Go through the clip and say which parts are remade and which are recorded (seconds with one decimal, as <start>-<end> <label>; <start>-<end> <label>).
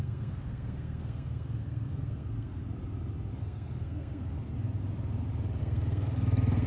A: 0.0-2.6 remade; 2.6-3.4 recorded; 3.4-4.3 remade; 4.3-5.6 recorded; 5.6-6.7 remade